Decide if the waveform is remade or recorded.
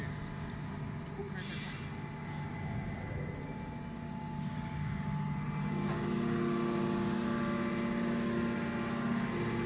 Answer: recorded